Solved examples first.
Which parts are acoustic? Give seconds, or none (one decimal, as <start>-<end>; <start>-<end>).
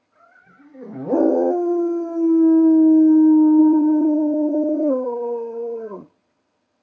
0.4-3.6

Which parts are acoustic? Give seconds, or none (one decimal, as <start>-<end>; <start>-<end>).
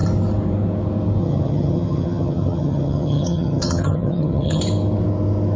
0.0-1.2; 4.6-5.6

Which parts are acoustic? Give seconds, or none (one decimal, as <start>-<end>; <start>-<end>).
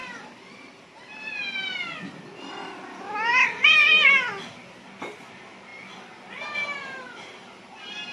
0.0-8.1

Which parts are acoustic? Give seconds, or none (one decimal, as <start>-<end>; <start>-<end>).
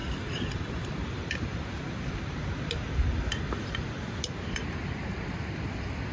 0.9-6.1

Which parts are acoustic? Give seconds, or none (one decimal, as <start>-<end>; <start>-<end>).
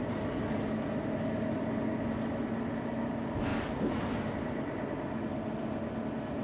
0.0-6.4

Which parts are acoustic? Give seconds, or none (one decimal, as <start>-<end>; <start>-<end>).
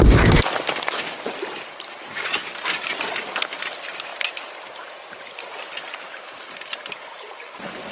0.0-7.9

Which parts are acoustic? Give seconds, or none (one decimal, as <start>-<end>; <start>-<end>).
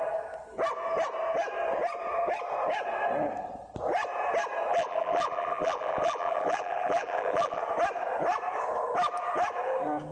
0.0-4.7; 7.6-10.1